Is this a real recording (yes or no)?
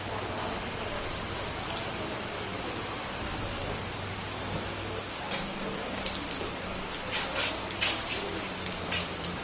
yes